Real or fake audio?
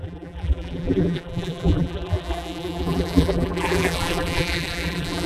fake